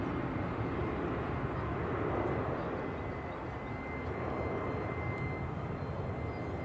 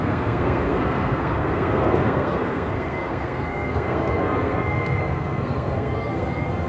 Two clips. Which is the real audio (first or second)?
first